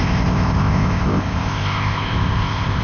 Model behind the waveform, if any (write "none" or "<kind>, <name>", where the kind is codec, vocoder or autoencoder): codec, ZipCodec